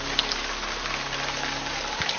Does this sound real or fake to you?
real